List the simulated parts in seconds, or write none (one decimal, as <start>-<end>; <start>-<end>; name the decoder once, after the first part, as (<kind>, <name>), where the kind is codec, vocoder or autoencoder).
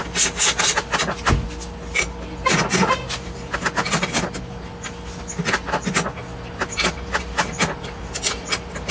none